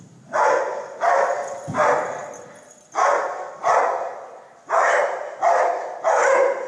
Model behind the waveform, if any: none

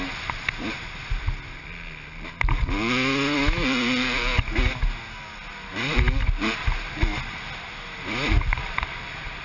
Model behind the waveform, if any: none